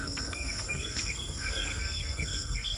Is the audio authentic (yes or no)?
no